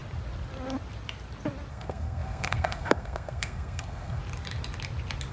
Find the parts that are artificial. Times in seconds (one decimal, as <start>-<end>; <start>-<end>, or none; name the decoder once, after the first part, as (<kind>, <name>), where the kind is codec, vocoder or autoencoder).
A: 1.7-4.2 (codec, SNAC)